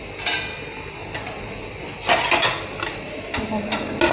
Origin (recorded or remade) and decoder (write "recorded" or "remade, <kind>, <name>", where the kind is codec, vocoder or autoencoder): recorded